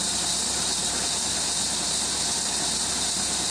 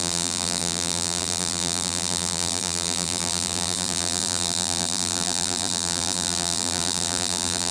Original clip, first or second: first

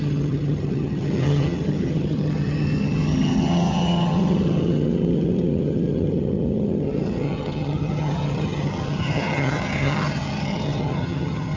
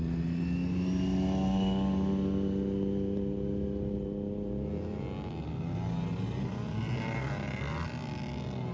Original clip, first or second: second